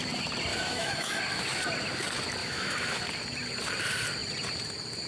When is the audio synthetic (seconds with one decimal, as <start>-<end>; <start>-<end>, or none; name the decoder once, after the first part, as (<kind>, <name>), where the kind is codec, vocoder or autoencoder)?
0.5-1.2 (autoencoder, DAC-VAE); 2.4-3.0